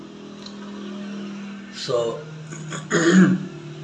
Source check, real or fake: real